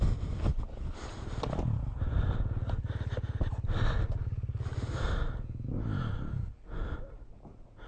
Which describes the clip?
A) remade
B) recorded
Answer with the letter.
B